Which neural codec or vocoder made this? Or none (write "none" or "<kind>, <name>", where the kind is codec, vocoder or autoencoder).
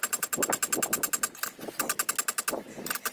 none